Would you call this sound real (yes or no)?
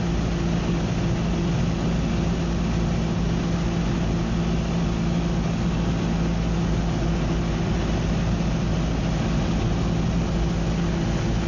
yes